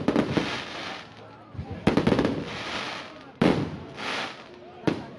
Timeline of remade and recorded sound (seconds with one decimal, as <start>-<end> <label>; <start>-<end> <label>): 0.0-5.2 recorded